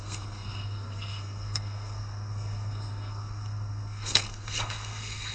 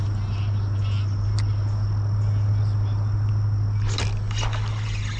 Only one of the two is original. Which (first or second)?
second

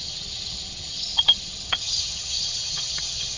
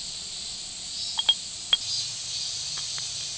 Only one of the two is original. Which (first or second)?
second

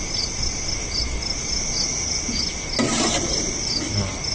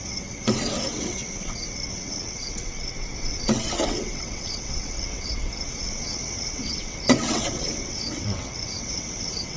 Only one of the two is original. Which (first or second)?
first